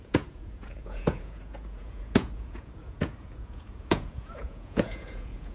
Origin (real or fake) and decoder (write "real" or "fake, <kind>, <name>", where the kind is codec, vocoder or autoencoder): fake, vocoder, Vocos